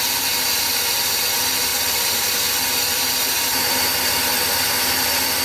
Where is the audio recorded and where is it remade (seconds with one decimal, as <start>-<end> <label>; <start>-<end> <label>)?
0.0-5.4 recorded